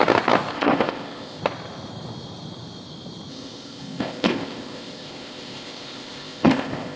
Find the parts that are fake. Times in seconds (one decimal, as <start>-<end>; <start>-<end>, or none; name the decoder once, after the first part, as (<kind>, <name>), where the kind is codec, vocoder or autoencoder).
0.5-1.4 (codec, ZipCodec); 3.3-7.0